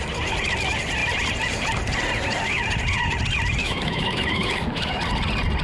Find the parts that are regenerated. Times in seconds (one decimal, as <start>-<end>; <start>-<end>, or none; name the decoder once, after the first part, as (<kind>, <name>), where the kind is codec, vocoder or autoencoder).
3.6-5.0 (autoencoder, DAC-VAE)